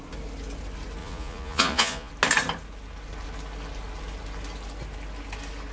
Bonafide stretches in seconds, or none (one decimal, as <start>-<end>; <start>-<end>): 0.0-1.0; 2.1-5.7